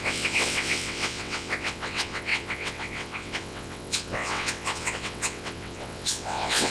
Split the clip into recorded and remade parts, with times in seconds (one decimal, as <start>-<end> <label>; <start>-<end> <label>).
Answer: 0.0-6.7 remade